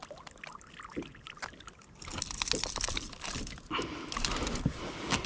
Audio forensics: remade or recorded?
recorded